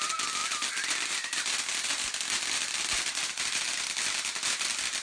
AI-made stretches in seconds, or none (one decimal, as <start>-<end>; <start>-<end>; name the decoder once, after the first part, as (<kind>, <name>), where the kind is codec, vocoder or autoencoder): none